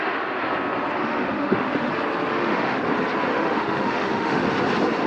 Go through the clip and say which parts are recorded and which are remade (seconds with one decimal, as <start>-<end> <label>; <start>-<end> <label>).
0.0-1.0 recorded; 1.0-1.9 remade; 1.9-2.3 recorded; 2.3-2.8 remade; 2.8-3.3 recorded; 3.3-4.5 remade; 4.5-5.1 recorded